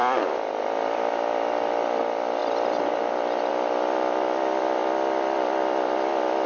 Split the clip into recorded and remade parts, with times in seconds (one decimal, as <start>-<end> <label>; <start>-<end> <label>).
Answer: 0.0-6.5 remade

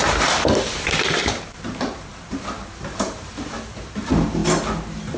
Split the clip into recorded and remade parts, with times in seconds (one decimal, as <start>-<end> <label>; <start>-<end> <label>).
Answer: 0.0-4.4 remade; 4.4-5.2 recorded

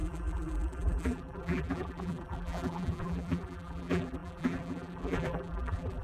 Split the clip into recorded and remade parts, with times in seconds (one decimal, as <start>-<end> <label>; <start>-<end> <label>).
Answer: 0.0-6.0 remade

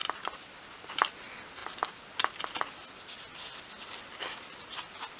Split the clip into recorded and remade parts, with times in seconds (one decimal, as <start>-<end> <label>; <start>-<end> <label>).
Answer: 0.0-5.2 recorded

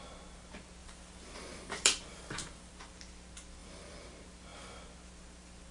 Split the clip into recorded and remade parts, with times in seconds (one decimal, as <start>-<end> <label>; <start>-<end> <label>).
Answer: 0.0-0.8 recorded; 0.8-2.9 remade; 2.9-3.6 recorded; 3.6-4.1 remade; 4.1-5.7 recorded